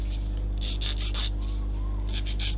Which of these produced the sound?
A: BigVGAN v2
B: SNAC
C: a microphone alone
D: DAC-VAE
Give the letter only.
C